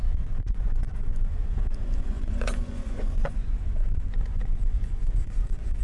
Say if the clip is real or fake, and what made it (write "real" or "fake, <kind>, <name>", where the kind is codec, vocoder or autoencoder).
fake, vocoder, Vocos